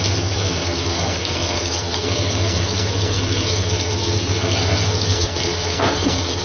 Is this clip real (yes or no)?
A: no